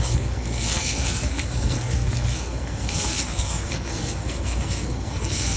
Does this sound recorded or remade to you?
remade